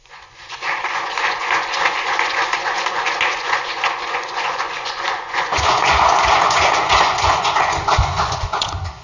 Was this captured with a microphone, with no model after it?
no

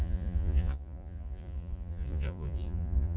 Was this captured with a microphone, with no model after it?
no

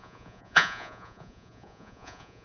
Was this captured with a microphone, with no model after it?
no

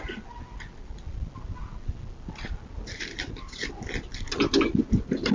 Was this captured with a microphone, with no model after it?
yes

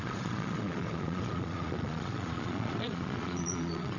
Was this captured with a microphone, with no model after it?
no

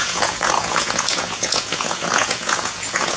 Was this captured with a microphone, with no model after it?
no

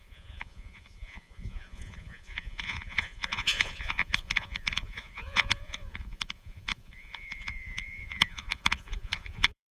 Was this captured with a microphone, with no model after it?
no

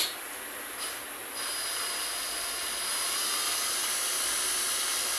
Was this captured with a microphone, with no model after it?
yes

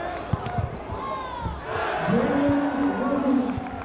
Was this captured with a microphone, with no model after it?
yes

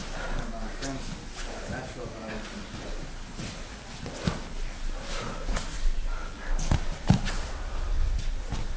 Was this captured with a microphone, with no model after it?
yes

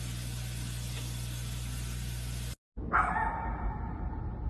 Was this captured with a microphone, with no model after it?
yes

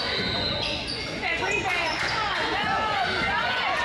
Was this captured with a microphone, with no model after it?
no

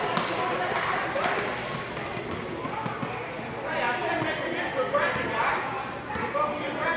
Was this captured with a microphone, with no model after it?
yes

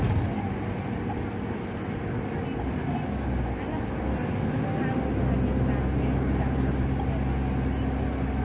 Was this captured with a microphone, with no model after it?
yes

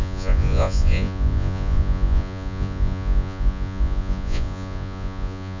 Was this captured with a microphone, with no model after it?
no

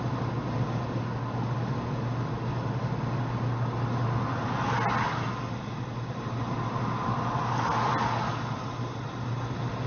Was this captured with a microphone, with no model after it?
yes